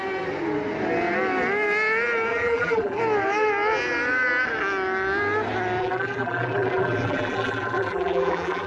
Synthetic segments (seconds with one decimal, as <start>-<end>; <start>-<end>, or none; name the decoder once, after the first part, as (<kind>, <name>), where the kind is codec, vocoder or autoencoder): 2.3-3.0 (vocoder, BigVGAN v2); 5.8-8.7